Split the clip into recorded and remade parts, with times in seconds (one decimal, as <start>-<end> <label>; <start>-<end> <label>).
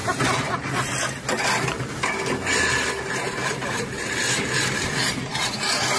0.0-6.0 recorded